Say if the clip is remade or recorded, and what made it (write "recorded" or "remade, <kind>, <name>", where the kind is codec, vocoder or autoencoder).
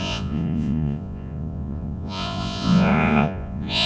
remade, vocoder, Vocos